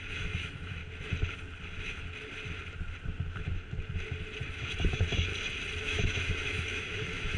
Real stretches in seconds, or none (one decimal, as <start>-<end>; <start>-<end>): 0.8-4.5; 5.3-5.8